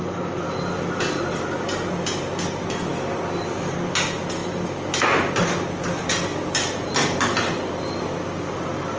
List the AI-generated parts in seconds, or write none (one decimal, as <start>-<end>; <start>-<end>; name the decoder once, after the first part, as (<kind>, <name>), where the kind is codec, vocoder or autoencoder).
none